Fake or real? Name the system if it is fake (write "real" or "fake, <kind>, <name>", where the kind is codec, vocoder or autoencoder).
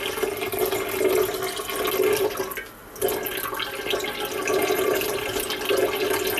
real